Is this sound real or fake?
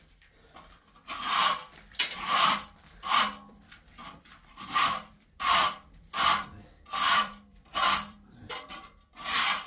fake